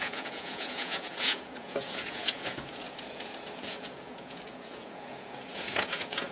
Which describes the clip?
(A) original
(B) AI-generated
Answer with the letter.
B